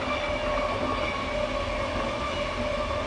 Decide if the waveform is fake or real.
real